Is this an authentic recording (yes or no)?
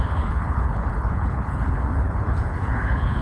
no